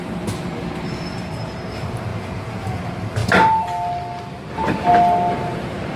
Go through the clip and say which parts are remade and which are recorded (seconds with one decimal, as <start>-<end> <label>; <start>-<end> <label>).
0.0-2.1 recorded; 2.1-2.8 remade; 2.8-6.0 recorded